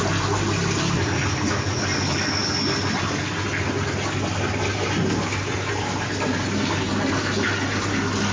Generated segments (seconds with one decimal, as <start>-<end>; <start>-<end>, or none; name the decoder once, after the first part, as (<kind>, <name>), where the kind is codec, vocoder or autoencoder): none